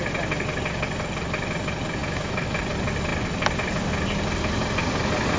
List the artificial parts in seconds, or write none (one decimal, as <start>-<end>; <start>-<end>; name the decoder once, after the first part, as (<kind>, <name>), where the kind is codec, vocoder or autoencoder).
2.0-2.6 (autoencoder, DAC-VAE)